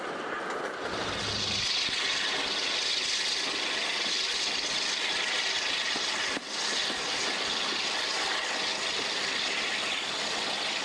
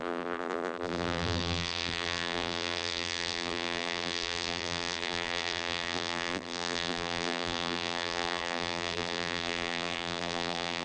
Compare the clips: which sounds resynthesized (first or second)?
second